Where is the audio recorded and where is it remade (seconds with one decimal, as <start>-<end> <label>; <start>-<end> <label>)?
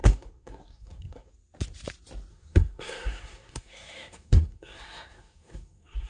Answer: 0.0-1.3 remade; 1.3-2.3 recorded; 2.3-6.1 remade